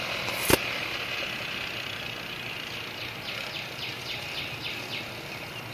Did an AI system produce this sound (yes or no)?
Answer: no